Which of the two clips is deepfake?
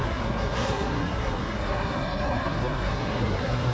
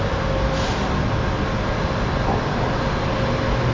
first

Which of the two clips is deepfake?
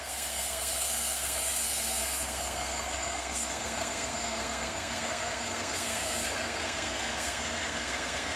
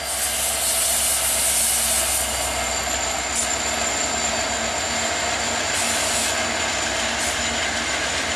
first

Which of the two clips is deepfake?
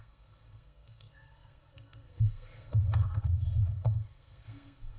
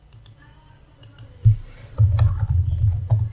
first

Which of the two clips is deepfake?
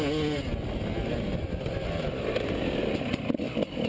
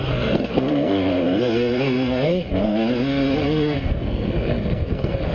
second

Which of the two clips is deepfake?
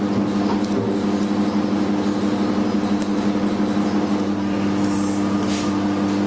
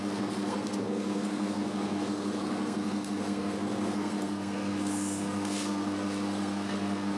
second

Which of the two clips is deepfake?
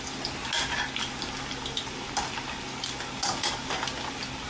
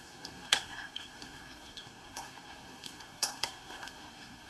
second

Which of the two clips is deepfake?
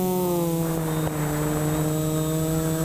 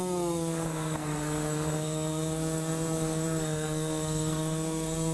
second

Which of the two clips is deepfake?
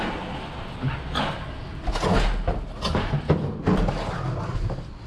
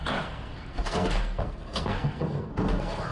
second